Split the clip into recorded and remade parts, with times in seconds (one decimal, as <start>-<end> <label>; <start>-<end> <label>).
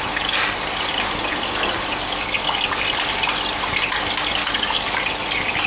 0.0-4.4 recorded; 4.4-5.0 remade; 5.0-5.7 recorded